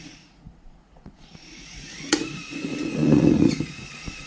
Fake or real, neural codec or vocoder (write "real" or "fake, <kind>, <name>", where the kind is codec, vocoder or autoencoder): fake, vocoder, Vocos